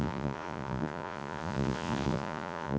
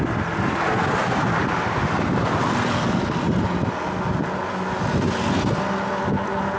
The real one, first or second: second